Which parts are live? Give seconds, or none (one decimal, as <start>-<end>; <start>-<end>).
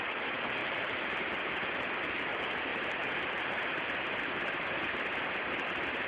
0.0-0.6; 1.2-6.1